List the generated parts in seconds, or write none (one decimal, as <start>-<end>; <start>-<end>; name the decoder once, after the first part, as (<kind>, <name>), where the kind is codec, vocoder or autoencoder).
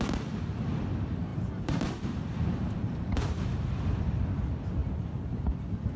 1.3-4.0 (vocoder, BigVGAN v2)